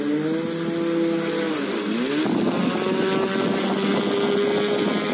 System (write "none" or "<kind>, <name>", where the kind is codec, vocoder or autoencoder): none